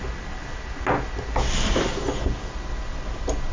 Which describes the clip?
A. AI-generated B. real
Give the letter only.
B